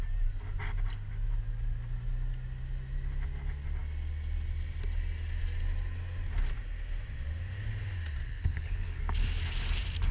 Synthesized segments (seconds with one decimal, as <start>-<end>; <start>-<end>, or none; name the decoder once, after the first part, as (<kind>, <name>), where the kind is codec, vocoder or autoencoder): 8.2-9.0 (codec, HILCodec)